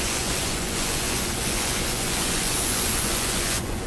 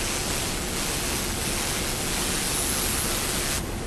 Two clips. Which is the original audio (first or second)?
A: second